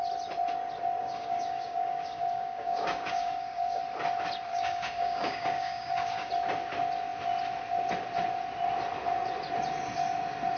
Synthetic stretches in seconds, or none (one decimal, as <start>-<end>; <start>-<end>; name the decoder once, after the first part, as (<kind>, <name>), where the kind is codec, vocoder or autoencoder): 1.0-3.8 (codec, DAC); 4.5-6.3